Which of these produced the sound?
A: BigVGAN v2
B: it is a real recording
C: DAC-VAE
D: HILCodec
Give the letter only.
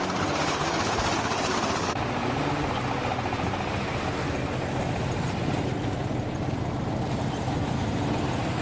A